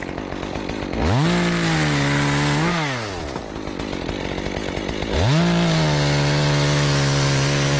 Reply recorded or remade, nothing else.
recorded